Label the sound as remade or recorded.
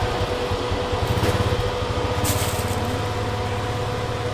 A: recorded